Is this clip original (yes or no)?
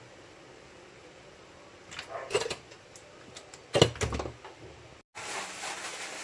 yes